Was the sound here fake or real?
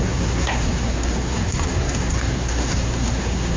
fake